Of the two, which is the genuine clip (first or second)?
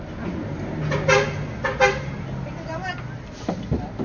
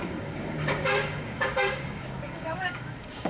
first